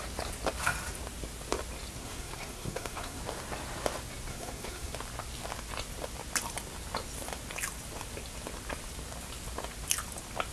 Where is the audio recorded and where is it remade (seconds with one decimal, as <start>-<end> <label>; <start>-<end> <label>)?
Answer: 0.0-2.0 recorded; 2.0-3.2 remade; 3.2-4.3 recorded; 4.3-4.9 remade; 4.9-10.5 recorded